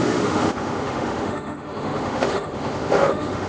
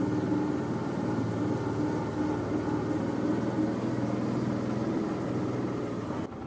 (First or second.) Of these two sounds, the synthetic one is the first